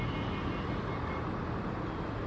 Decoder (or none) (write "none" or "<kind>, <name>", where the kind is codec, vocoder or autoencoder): none